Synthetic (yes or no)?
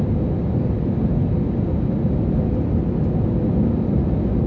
no